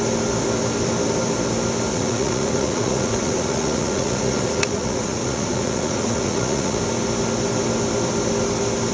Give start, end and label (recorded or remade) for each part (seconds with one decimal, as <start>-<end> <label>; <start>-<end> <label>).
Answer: 0.0-1.9 recorded; 1.9-6.8 remade; 6.8-8.9 recorded